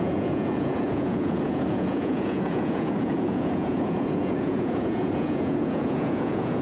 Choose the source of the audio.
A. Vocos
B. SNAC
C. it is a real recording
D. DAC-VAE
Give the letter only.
A